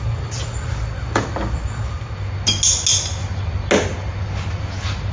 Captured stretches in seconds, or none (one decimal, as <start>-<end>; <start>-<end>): 0.0-5.1